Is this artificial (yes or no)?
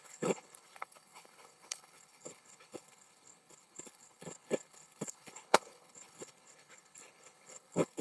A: yes